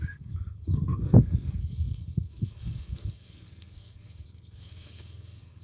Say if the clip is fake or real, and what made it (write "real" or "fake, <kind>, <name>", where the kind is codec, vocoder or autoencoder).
fake, codec, SNAC